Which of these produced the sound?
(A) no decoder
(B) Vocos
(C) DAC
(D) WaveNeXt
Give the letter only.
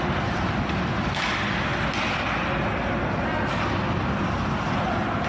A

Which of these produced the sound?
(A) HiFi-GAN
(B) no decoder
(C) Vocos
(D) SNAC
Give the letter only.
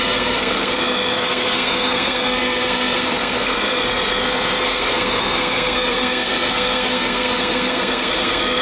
D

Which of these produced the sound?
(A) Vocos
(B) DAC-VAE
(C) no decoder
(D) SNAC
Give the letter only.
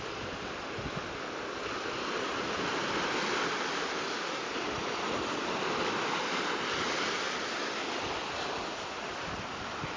C